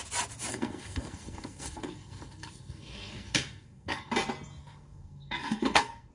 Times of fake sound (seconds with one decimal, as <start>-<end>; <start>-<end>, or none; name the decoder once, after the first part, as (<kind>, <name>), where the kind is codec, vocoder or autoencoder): 0.5-4.1 (codec, SNAC); 4.6-6.1